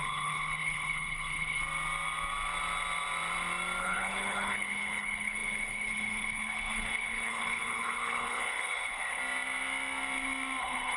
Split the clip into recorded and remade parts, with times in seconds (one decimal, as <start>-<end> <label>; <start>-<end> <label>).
0.0-1.6 remade; 1.6-3.8 recorded; 3.8-9.2 remade; 9.2-10.6 recorded; 10.6-11.0 remade